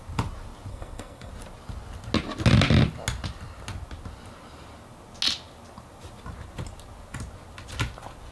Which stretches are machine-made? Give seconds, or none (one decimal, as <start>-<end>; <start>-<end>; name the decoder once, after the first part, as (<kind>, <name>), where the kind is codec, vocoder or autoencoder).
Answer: 0.7-1.3 (codec, SNAC)